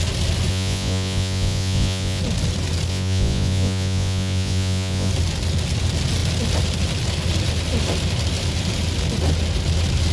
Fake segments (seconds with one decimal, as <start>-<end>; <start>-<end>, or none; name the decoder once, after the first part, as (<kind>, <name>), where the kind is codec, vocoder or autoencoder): 0.5-2.2 (vocoder, Vocos); 2.9-5.1